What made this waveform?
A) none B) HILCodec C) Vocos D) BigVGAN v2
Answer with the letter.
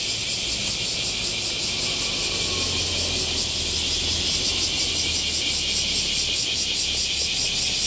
A